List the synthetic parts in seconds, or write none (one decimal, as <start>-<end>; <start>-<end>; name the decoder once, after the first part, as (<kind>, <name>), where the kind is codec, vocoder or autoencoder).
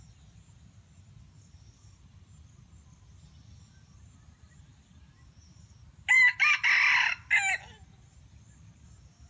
none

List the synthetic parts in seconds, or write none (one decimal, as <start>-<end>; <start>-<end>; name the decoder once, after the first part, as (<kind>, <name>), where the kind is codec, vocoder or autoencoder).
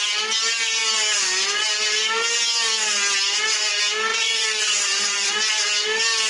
4.1-5.3 (vocoder, Vocos)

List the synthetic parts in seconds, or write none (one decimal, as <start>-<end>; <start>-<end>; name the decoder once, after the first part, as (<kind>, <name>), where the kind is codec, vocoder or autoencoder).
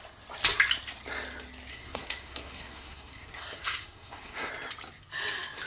1.7-4.5 (codec, SNAC)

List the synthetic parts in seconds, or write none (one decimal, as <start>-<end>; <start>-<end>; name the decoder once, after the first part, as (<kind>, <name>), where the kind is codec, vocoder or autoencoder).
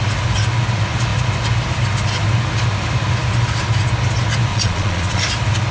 4.5-5.2 (vocoder, Vocos)